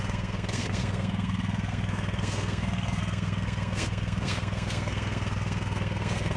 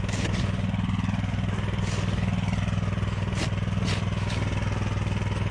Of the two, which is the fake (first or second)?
first